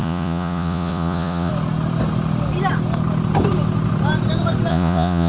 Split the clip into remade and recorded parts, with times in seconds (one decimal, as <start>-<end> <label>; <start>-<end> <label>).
0.0-1.5 remade; 1.5-4.7 recorded; 4.7-5.3 remade